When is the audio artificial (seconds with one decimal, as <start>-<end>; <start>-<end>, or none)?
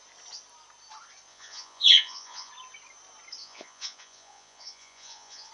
1.3-2.5; 3.4-5.5